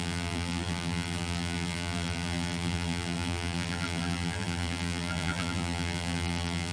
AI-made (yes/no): yes